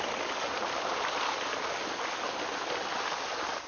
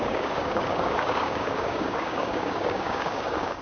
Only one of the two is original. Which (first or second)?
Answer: first